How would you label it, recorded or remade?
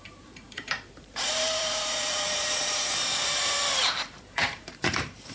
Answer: remade